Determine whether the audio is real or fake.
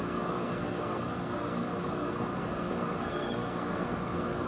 fake